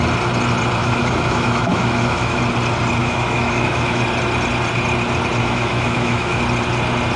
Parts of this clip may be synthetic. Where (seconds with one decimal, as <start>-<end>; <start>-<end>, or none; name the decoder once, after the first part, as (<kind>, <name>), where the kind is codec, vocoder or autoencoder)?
0.8-2.4 (autoencoder, DAC-VAE); 3.0-4.0; 5.4-6.4